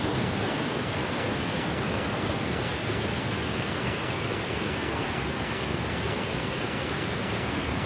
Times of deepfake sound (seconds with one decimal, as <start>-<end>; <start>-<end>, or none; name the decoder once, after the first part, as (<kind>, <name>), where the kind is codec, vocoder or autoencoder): 0.0-7.9 (codec, SNAC)